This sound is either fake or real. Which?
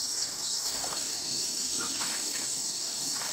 fake